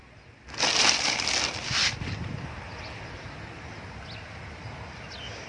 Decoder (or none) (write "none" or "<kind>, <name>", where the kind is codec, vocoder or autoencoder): none